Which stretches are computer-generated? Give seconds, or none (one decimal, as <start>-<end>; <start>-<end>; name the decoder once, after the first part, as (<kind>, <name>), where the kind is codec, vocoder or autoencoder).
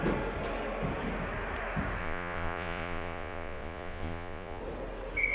2.0-4.6 (vocoder, Vocos)